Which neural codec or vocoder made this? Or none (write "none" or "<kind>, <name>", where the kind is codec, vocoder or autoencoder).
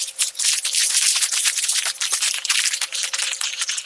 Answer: none